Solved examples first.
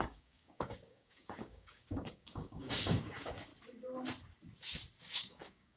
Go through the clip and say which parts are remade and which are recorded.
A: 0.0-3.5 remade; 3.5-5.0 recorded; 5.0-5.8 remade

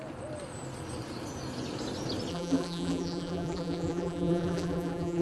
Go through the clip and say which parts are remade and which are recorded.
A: 0.0-2.3 recorded; 2.3-5.2 remade

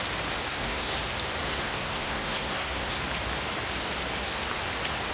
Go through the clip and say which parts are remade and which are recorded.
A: 0.0-0.5 recorded; 0.5-1.0 remade; 1.0-1.4 recorded; 1.4-3.0 remade; 3.0-5.1 recorded

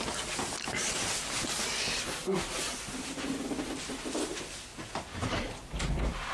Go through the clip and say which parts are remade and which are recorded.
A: 0.0-6.3 recorded

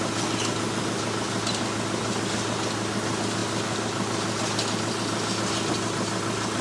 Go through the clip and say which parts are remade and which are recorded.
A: 0.0-6.6 recorded

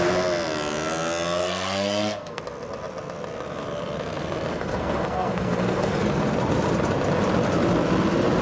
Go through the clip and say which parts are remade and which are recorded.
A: 0.0-1.4 recorded; 1.4-2.4 remade; 2.4-4.5 recorded; 4.5-6.0 remade; 6.0-8.4 recorded